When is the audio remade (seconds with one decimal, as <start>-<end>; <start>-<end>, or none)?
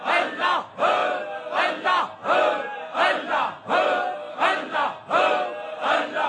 none